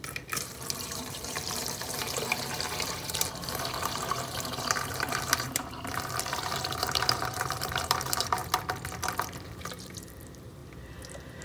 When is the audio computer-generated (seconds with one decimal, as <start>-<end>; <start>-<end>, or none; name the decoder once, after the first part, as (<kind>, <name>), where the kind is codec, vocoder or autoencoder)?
0.0-8.4 (vocoder, BigVGAN v2); 9.2-10.6